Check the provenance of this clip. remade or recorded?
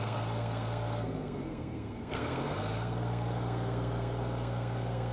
remade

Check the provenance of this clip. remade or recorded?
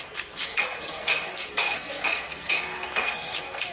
remade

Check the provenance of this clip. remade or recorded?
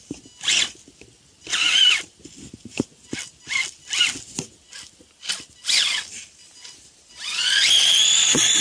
recorded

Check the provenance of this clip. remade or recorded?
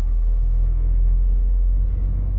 remade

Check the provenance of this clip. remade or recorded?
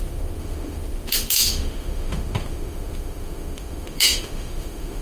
remade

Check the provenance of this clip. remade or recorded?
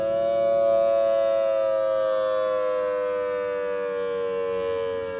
recorded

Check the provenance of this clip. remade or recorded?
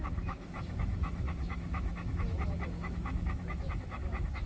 remade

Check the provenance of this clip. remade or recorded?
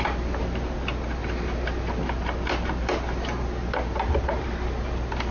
recorded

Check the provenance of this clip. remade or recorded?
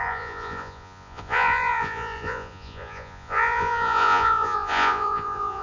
remade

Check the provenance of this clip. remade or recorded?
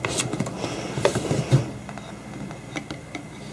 recorded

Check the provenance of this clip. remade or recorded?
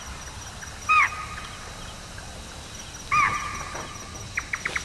recorded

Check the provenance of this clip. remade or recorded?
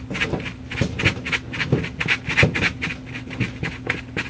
recorded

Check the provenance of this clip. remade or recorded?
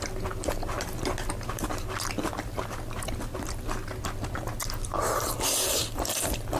recorded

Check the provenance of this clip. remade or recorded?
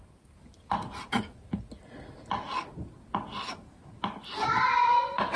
recorded